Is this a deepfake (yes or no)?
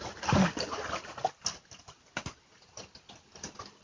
no